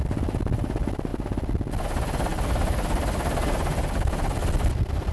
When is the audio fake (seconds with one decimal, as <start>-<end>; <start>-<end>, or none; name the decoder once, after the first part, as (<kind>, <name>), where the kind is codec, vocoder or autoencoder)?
2.3-3.3 (vocoder, BigVGAN v2)